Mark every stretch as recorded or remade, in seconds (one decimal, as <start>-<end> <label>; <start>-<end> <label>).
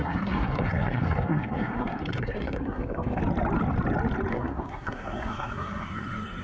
0.0-3.2 remade; 3.2-4.3 recorded; 4.3-6.4 remade